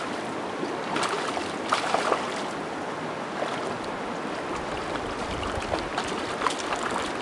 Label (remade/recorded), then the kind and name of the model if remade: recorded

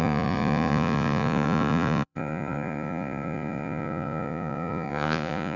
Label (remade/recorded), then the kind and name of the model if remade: remade, vocoder, Vocos